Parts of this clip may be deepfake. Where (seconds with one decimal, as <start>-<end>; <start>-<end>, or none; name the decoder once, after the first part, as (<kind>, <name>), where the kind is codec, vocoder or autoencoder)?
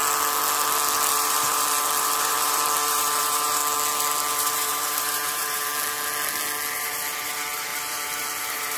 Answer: 1.1-3.6 (vocoder, BigVGAN v2); 4.3-5.7; 6.7-8.8